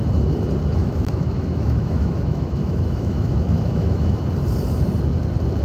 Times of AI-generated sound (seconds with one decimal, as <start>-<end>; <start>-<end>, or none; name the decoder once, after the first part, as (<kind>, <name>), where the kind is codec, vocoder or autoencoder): 0.8-4.2 (autoencoder, DAC-VAE)